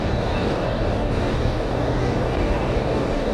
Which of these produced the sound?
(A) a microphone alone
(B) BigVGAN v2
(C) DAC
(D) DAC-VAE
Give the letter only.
C